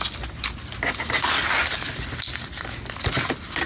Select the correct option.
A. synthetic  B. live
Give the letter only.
B